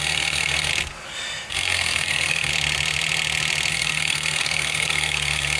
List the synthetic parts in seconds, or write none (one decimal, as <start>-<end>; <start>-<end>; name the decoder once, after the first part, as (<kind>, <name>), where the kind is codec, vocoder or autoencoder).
0.0-0.7 (codec, SNAC); 1.5-2.5; 3.7-5.6